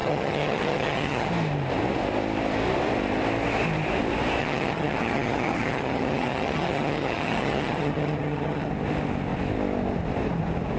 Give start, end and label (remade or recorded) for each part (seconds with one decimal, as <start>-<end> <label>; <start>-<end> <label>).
0.0-1.3 remade; 1.3-4.4 recorded; 4.4-8.7 remade; 8.7-10.8 recorded